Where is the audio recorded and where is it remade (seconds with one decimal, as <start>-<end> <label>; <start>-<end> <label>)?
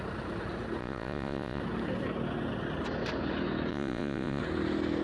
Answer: 0.0-0.8 recorded; 0.8-1.6 remade; 1.6-3.7 recorded; 3.7-4.4 remade; 4.4-5.0 recorded